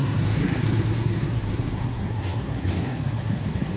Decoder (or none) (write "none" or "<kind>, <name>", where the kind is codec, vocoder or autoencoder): codec, SNAC